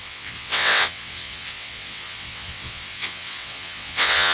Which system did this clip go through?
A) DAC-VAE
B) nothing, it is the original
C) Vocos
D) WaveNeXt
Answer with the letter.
D